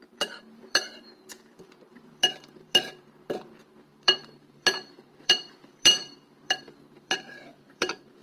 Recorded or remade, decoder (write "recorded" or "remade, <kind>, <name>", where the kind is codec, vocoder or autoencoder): remade, vocoder, BigVGAN v2